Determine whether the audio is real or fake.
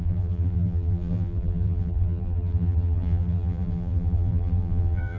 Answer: fake